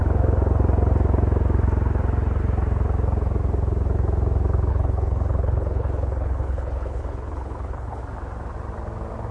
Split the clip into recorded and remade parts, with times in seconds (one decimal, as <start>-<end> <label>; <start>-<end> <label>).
0.0-4.7 recorded; 4.7-8.0 remade; 8.0-9.3 recorded